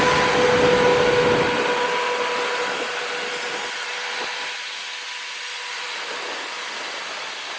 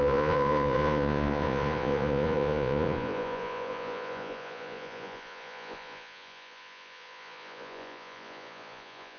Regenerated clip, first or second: second